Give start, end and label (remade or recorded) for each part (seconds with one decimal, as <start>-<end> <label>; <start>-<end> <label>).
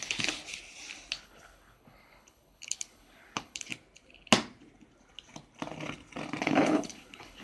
0.0-0.4 remade; 0.4-1.1 recorded; 1.1-3.7 remade; 3.7-6.4 recorded; 6.4-7.4 remade